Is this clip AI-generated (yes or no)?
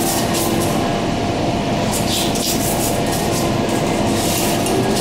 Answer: no